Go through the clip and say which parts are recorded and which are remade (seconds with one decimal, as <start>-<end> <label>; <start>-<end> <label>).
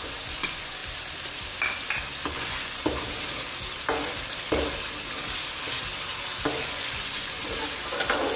0.0-0.8 remade; 0.8-2.3 recorded; 2.3-2.8 remade; 2.8-6.6 recorded; 6.6-7.4 remade; 7.4-8.4 recorded